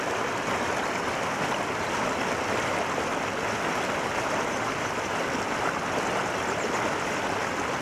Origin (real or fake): real